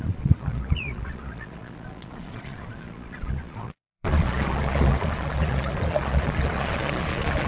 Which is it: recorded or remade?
remade